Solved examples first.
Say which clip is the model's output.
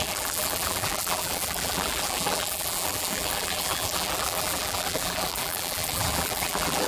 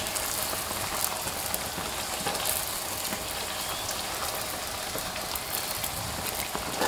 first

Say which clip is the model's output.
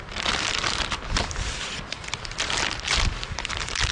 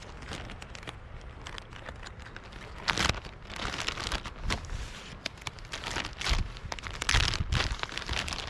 first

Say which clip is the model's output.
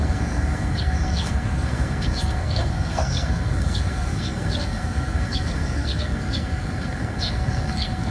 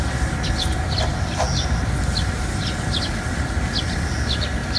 first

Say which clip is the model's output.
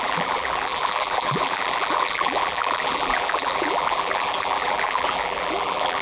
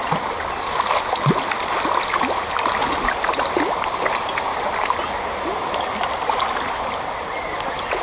first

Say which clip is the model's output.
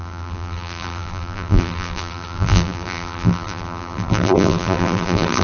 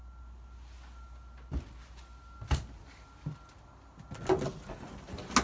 first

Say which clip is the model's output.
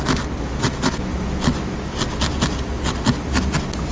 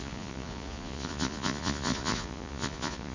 second